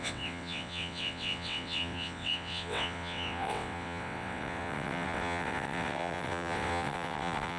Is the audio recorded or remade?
remade